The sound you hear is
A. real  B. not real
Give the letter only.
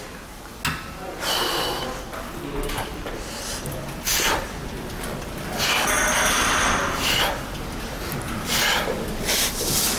A